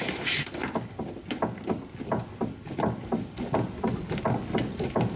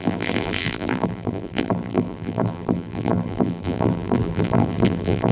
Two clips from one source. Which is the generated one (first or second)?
second